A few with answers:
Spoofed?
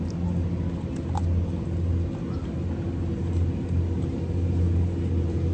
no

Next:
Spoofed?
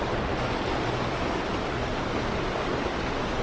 no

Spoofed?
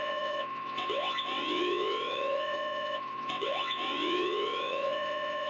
yes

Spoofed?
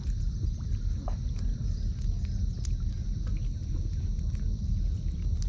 no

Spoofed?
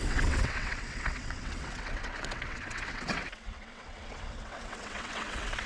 yes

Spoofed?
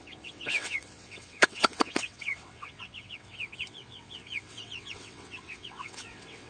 yes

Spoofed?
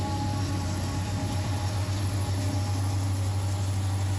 no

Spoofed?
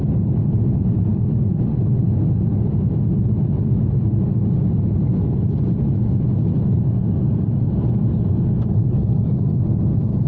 no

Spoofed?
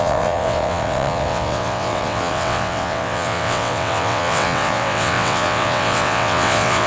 yes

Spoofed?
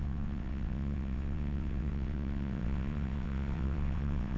yes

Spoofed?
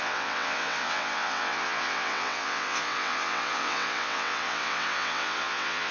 yes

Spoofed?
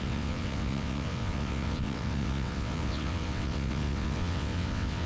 yes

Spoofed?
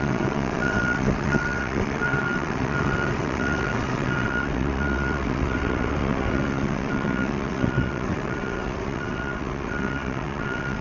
yes